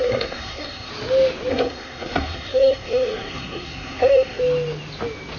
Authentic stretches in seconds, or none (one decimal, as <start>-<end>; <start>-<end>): 0.9-1.5; 4.4-5.4